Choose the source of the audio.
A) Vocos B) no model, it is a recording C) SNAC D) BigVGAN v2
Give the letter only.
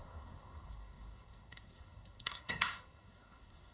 C